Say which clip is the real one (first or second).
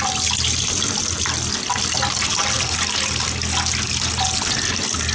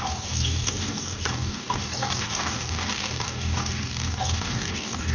first